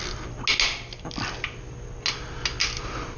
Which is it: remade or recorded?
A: recorded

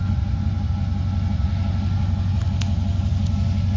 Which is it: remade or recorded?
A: recorded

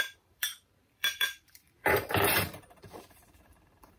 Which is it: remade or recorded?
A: remade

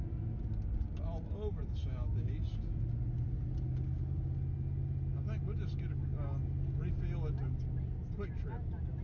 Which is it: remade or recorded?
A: recorded